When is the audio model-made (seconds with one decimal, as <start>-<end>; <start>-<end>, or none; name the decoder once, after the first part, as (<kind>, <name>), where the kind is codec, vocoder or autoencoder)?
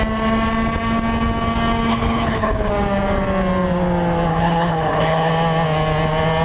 1.9-2.7 (codec, HILCodec); 4.3-5.3